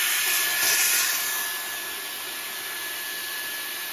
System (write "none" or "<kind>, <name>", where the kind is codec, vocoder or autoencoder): none